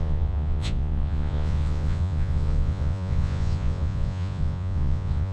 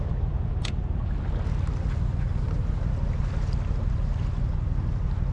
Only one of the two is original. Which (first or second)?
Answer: second